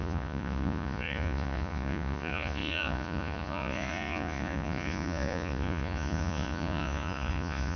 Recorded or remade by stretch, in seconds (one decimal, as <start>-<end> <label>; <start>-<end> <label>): 0.0-7.8 remade